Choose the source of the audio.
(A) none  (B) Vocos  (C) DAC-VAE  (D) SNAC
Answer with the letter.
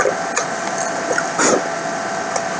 A